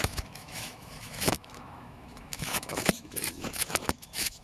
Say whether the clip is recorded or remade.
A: remade